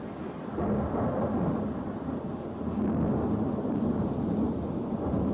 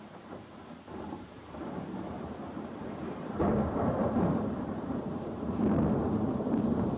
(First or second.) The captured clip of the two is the first